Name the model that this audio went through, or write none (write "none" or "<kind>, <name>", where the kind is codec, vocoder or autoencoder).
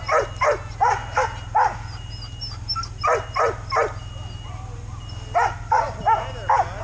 none